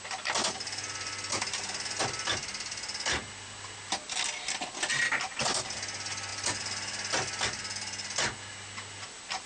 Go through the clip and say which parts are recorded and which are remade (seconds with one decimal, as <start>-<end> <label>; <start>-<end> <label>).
0.0-9.5 recorded